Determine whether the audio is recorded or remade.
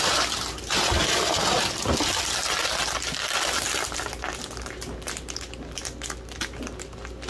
recorded